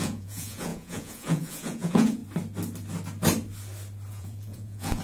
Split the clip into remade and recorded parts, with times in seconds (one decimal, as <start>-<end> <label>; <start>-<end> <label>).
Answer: 0.0-2.2 remade; 2.2-4.1 recorded; 4.1-5.0 remade